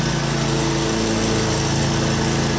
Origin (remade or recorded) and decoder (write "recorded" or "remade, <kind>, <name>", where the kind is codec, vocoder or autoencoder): recorded